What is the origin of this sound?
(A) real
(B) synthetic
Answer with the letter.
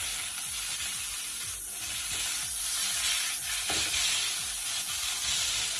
A